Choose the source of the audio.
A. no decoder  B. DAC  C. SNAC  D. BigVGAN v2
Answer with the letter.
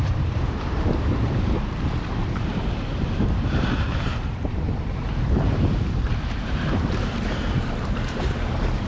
D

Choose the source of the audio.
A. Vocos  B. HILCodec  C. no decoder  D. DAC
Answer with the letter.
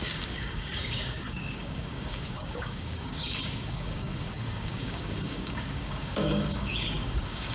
D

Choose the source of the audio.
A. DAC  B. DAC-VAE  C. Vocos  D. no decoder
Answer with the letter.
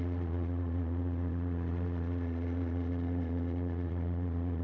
C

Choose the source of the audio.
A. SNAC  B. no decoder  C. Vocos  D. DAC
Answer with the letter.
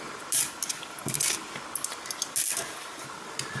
B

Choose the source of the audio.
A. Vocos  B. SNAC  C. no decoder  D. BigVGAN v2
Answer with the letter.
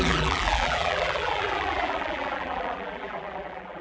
D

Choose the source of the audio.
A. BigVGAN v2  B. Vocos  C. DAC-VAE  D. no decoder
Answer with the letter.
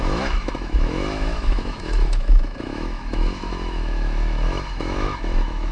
C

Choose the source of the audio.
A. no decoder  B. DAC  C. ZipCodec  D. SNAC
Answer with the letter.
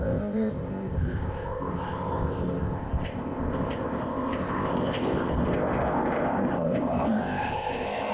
C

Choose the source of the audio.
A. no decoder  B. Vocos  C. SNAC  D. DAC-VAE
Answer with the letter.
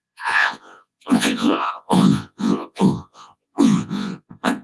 B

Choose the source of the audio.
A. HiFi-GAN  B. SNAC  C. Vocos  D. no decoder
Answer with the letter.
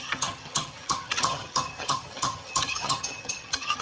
A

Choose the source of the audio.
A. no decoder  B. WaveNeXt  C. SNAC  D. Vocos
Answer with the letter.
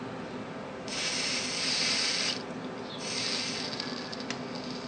A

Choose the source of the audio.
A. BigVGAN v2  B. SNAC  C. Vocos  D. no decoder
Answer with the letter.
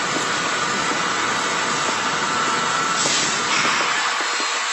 D